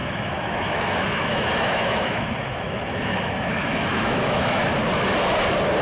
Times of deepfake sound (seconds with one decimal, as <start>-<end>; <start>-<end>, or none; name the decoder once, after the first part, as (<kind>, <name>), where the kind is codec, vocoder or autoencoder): 0.0-4.7 (autoencoder, DAC-VAE)